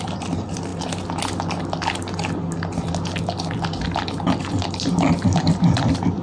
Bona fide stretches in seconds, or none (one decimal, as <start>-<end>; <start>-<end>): 0.7-4.4